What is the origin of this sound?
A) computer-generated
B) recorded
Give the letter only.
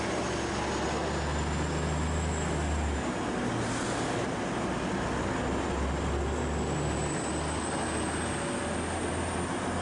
B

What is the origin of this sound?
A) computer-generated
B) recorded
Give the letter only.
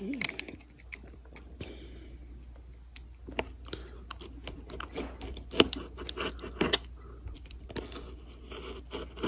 B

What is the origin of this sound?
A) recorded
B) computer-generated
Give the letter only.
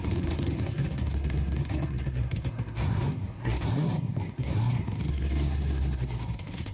B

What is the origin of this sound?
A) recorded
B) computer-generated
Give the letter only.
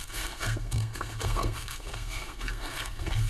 B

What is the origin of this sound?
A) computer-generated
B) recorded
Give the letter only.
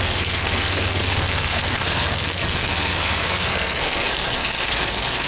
A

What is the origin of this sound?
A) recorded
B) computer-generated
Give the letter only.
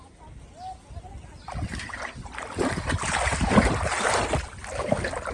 A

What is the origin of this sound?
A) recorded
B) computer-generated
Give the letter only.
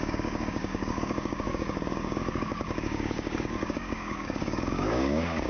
B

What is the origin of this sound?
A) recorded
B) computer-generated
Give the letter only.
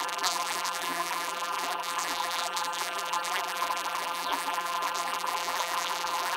B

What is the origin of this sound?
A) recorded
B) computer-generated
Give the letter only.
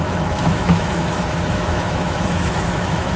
B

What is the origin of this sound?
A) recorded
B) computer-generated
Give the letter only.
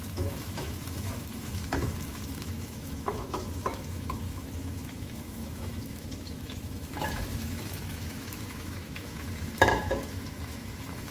B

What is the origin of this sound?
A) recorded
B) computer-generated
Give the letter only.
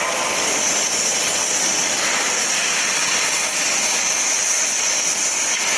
A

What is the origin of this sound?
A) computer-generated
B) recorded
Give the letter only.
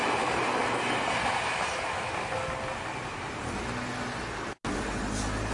B